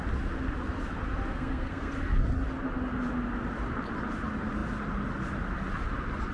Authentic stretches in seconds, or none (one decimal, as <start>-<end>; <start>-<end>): 0.0-1.3; 1.9-6.3